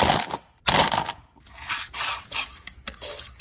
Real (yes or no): yes